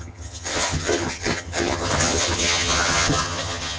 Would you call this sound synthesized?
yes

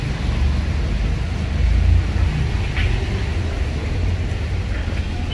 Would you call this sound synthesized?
no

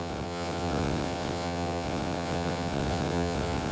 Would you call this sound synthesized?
yes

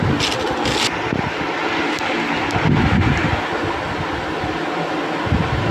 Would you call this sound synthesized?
no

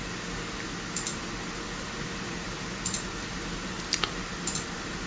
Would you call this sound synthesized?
no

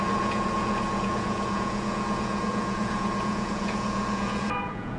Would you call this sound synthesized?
yes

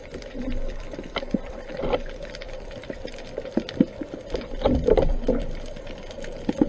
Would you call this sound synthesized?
yes